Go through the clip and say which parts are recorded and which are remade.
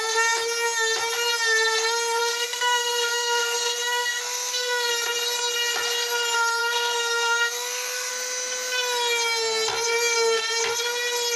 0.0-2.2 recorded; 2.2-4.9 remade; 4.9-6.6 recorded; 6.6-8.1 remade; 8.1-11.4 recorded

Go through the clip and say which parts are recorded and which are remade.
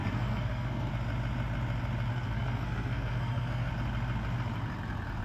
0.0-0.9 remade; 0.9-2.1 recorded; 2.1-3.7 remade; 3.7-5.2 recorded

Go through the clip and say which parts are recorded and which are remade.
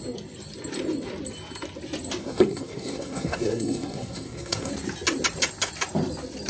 0.0-2.2 recorded; 2.2-4.7 remade; 4.7-6.5 recorded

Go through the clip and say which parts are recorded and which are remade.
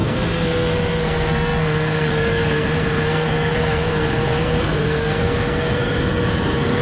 0.0-6.8 remade